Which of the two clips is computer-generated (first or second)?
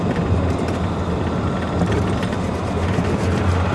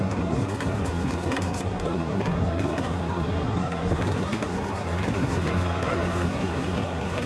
second